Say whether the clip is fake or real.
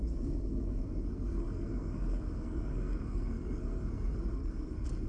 fake